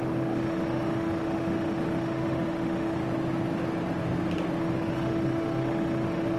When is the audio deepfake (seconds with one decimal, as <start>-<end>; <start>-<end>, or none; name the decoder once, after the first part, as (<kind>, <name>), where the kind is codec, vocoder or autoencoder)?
0.0-3.0 (autoencoder, DAC-VAE); 4.6-6.4